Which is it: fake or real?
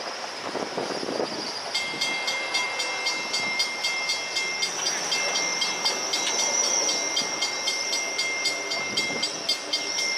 real